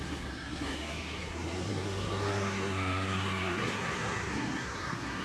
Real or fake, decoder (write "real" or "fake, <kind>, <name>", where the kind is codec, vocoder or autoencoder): fake, codec, SNAC